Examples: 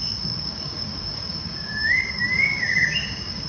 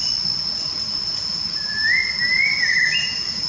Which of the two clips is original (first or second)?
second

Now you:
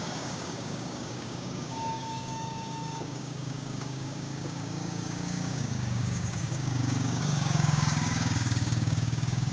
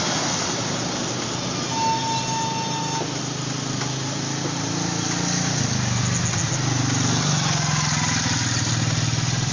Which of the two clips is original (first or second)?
second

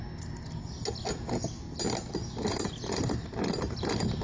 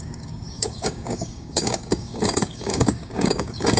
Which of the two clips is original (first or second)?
first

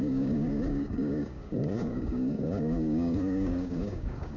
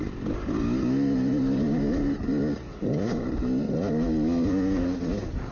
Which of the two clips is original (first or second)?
second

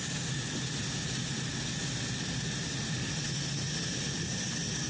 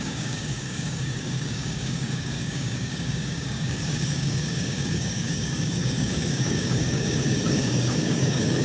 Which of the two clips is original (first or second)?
first